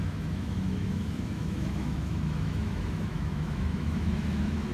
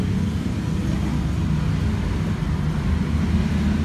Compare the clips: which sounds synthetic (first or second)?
first